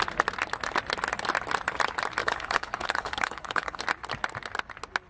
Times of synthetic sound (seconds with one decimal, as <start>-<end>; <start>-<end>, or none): 2.2-3.8

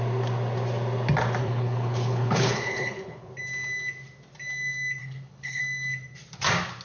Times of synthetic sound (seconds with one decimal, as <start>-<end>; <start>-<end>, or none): 1.4-3.3; 5.0-5.6

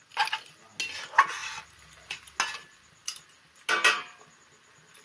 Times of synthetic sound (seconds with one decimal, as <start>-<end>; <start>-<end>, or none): none

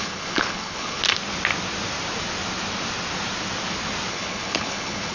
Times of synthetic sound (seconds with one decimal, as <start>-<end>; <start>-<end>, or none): 0.0-1.0; 4.1-5.1

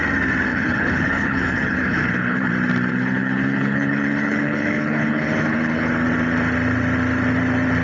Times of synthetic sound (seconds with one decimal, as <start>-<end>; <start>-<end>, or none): 0.5-2.5; 2.9-5.9

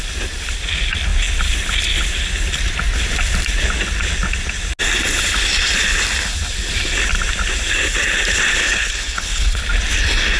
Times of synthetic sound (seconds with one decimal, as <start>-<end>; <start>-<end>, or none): 8.6-9.6

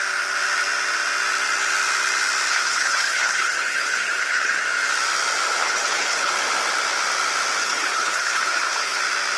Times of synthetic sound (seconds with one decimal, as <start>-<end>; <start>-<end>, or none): 2.5-4.6; 5.6-6.3; 7.6-9.0